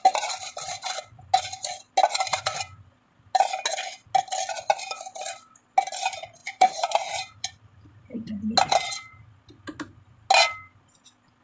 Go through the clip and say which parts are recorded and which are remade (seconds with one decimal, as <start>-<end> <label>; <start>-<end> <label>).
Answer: 0.0-6.4 recorded; 6.4-8.3 remade; 8.3-11.4 recorded